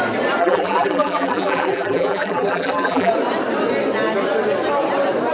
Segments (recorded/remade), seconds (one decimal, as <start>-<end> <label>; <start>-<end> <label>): 0.0-0.4 recorded; 0.4-3.1 remade; 3.1-5.3 recorded